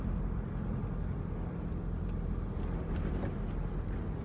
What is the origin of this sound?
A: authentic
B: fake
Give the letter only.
A